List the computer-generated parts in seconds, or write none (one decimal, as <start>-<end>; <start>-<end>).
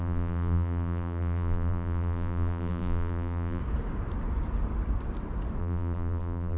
0.0-3.6; 5.6-6.6